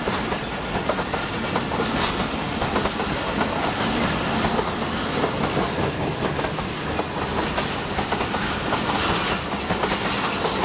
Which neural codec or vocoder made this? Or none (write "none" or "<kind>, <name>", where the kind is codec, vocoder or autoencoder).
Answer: none